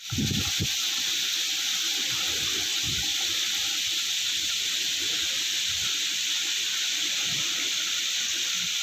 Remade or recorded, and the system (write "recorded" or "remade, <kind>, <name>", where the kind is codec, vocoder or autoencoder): recorded